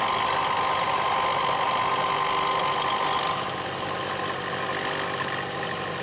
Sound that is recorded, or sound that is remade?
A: recorded